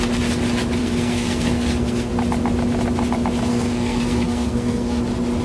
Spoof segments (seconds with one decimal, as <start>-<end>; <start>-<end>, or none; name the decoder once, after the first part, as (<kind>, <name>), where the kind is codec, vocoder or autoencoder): 0.8-2.1 (codec, SNAC); 3.5-5.0